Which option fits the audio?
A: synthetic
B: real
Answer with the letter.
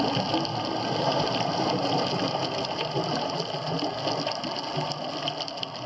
B